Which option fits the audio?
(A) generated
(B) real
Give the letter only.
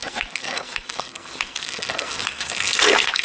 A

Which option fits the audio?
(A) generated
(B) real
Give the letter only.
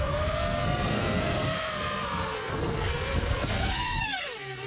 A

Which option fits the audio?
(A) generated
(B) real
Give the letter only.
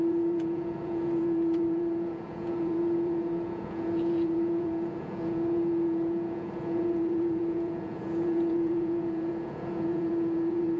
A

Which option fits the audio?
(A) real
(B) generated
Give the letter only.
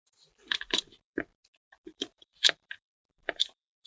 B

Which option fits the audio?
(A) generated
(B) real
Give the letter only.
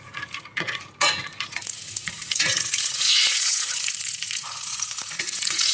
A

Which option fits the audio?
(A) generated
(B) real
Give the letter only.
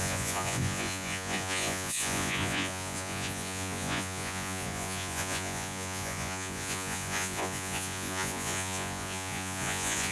A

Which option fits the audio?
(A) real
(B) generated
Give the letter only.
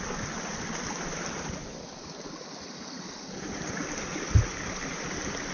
A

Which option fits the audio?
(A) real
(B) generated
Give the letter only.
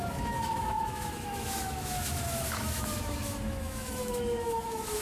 B